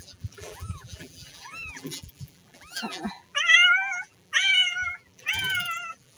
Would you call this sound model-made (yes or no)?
yes